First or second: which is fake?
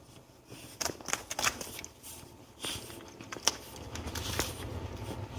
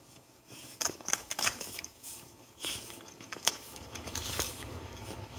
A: second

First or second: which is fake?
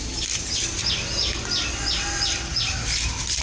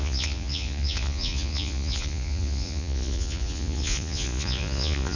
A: second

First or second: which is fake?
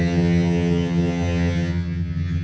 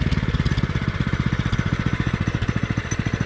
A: first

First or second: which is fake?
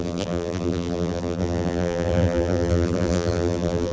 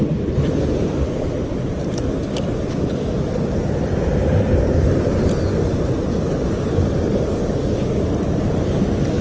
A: first